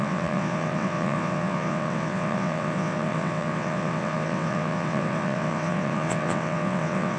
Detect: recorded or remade remade